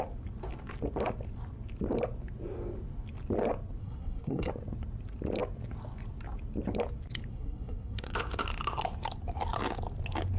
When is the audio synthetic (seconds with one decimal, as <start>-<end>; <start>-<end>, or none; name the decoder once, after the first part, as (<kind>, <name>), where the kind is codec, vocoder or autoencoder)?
3.8-4.5 (codec, SNAC); 7.3-8.1